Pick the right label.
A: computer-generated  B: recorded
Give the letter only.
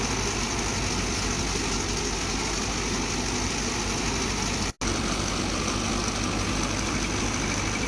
B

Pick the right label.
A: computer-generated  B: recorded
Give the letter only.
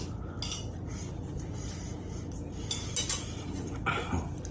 B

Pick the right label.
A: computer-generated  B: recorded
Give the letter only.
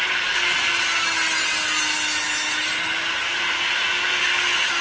B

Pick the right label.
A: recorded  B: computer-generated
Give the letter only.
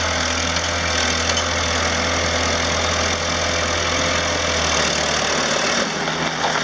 A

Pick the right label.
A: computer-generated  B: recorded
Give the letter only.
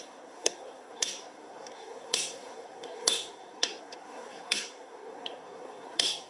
A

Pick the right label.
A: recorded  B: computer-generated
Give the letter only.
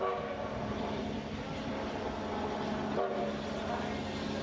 A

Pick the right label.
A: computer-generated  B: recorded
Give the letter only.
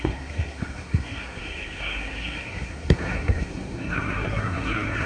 A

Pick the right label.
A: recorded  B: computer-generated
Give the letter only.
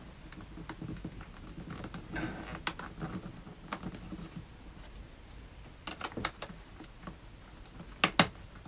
A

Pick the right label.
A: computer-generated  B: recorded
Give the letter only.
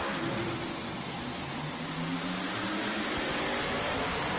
B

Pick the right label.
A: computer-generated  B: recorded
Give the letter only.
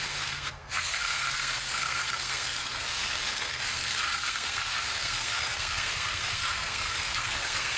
A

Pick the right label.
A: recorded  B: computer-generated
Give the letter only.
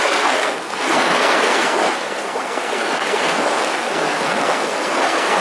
B